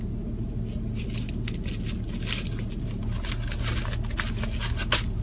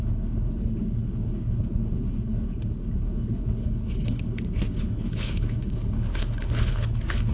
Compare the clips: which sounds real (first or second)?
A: first